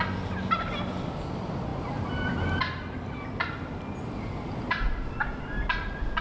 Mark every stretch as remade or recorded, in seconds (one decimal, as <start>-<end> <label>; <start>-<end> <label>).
0.0-6.2 recorded